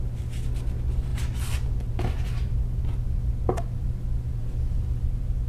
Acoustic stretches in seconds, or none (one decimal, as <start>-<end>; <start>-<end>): 0.0-5.5